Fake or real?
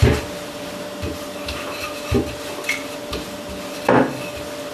real